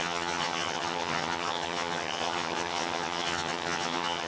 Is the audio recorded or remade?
remade